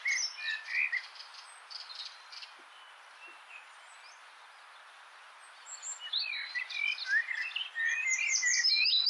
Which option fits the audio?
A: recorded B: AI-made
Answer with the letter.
A